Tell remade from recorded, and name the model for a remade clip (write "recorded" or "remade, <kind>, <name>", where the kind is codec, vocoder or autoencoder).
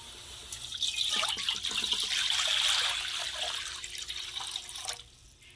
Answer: recorded